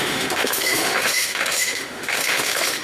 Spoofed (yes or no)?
yes